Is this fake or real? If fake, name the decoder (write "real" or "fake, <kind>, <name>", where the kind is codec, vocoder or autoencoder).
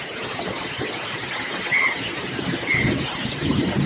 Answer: real